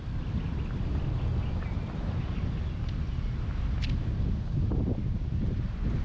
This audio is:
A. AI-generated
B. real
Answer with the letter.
B